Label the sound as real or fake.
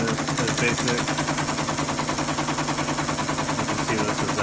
real